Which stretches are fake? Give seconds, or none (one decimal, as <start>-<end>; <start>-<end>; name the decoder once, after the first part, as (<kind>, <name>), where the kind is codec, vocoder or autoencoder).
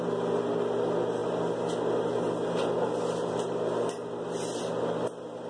none